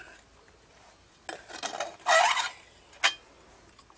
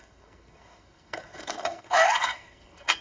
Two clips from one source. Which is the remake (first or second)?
second